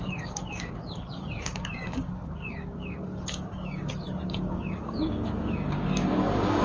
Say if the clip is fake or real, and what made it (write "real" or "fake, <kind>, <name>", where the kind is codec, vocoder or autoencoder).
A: fake, codec, DAC